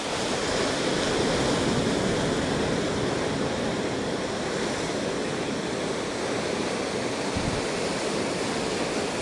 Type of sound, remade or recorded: recorded